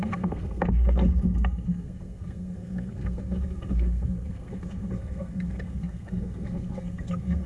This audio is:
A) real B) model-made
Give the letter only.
B